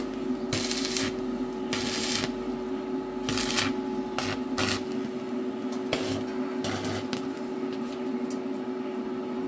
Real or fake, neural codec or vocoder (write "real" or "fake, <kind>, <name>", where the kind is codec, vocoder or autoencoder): real